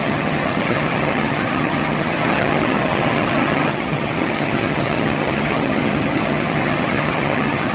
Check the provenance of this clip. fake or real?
fake